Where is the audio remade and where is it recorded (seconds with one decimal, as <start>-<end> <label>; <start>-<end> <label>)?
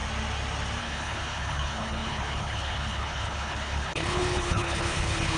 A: 0.0-0.8 recorded; 0.8-5.4 remade